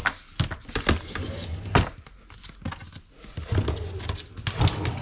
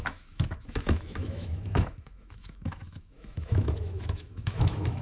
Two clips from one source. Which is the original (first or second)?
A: first